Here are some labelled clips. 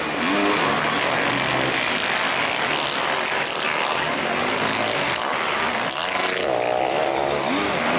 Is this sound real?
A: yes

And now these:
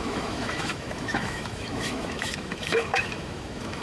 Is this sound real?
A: no